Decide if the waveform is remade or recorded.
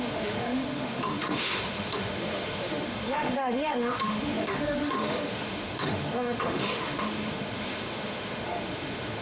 remade